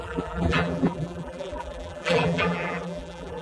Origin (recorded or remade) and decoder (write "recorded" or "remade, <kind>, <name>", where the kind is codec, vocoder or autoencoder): remade, vocoder, BigVGAN v2